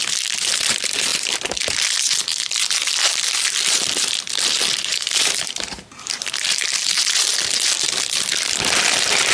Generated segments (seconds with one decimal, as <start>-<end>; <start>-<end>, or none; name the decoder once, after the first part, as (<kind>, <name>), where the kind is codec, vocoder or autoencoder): 4.9-7.0 (vocoder, BigVGAN v2)